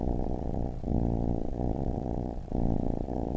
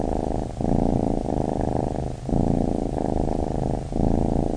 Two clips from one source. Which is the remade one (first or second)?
first